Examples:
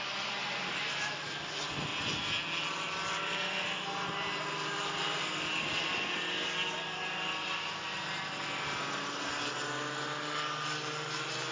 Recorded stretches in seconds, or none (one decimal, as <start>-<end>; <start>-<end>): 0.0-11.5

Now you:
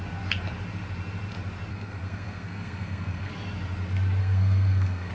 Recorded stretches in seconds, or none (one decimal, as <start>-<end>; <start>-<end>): 0.0-1.7; 3.3-4.2

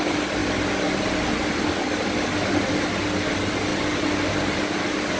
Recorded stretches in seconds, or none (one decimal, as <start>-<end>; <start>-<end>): 0.0-5.2

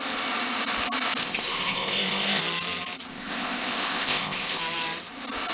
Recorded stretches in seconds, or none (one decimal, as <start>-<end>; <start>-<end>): 0.0-1.2; 2.4-3.1; 4.6-5.5